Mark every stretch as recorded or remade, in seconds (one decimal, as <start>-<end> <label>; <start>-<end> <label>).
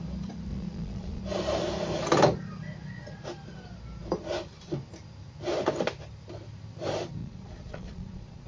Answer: 0.0-0.5 recorded; 0.5-1.2 remade; 1.2-7.2 recorded; 7.2-8.5 remade